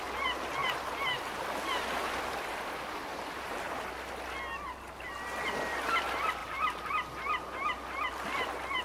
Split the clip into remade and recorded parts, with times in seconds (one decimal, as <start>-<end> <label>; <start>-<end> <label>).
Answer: 0.0-0.6 recorded; 0.6-1.3 remade; 1.3-3.1 recorded; 3.1-3.9 remade; 3.9-6.4 recorded; 6.4-6.9 remade; 6.9-8.8 recorded